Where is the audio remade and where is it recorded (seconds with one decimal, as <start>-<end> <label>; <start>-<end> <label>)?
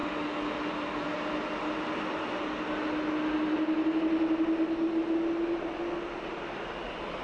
0.0-7.2 recorded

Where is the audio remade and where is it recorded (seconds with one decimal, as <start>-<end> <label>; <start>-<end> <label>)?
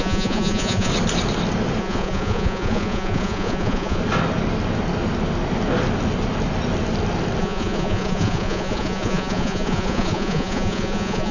0.0-0.9 remade; 0.9-1.8 recorded; 1.8-4.0 remade; 4.0-7.4 recorded; 7.4-11.3 remade